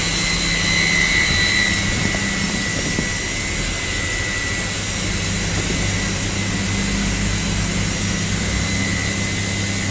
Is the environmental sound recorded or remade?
recorded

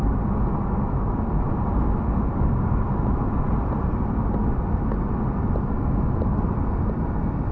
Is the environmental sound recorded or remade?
recorded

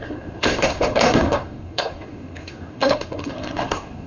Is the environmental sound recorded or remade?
remade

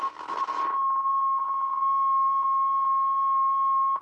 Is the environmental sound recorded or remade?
recorded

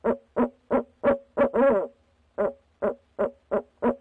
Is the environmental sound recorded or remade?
recorded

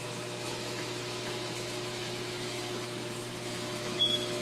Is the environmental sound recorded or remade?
remade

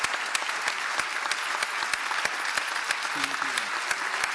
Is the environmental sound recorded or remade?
recorded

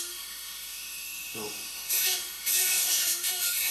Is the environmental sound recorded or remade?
remade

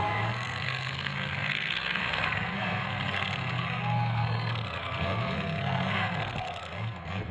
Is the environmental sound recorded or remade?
remade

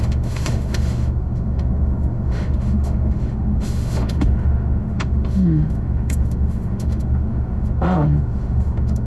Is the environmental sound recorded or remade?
remade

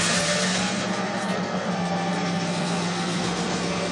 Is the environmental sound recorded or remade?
remade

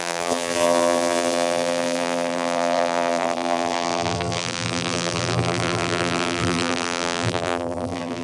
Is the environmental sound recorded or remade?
remade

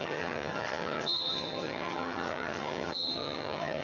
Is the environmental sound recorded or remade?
remade